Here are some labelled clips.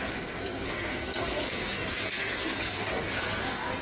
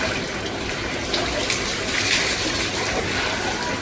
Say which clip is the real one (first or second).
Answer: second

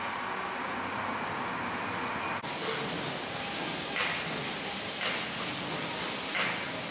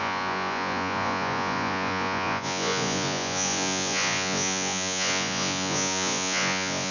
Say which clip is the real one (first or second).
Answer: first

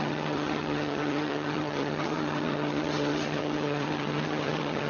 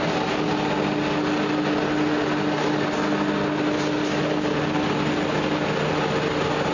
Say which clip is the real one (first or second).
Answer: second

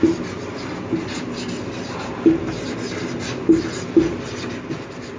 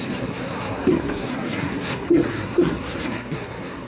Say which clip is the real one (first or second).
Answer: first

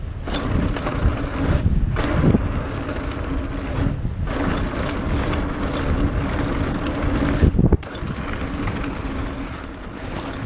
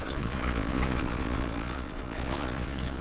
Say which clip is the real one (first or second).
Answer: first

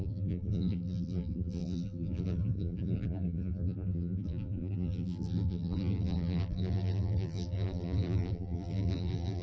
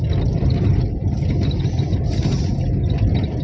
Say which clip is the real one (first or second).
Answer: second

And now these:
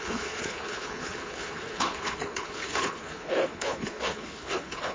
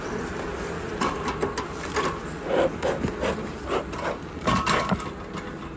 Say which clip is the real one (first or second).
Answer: second